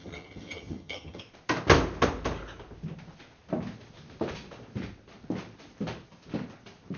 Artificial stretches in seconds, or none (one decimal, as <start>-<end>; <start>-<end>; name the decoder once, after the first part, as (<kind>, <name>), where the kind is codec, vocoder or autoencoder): 0.0-1.2 (vocoder, HiFi-GAN)